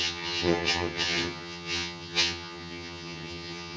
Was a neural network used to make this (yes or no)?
yes